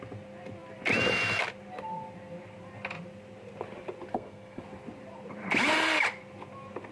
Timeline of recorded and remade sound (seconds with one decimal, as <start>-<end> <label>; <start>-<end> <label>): 0.0-4.1 recorded; 4.1-4.6 remade; 4.6-6.9 recorded